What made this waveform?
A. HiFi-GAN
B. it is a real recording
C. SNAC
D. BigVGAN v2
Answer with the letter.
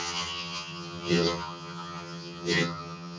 A